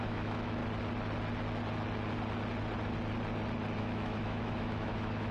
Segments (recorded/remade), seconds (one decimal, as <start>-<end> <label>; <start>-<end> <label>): 0.0-0.6 remade; 0.6-3.8 recorded; 3.8-5.3 remade